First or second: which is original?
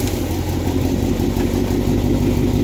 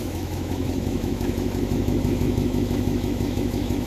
first